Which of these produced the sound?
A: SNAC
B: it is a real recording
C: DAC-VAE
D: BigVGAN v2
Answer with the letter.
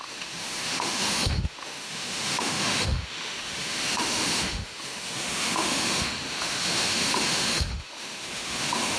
C